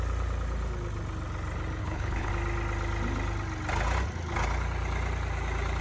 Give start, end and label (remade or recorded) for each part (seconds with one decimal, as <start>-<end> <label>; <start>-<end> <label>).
0.0-1.8 recorded; 1.8-2.3 remade; 2.3-5.8 recorded